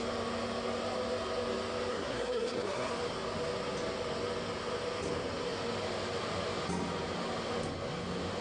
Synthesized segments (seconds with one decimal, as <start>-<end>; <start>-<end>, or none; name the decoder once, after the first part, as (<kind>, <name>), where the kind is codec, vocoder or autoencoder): 1.9-2.9 (codec, SNAC)